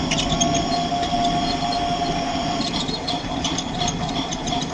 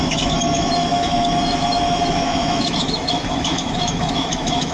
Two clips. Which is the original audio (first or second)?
first